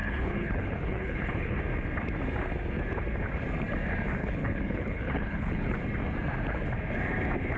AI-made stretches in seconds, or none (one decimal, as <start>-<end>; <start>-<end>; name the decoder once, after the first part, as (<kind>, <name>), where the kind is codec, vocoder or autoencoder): 0.0-1.6 (codec, HILCodec); 4.2-5.7